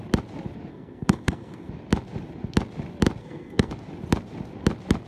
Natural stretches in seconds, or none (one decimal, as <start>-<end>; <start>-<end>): 0.0-0.7; 1.7-3.2; 3.7-5.1